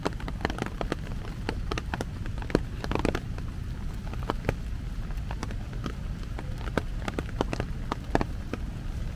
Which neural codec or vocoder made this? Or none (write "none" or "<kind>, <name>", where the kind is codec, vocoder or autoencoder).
none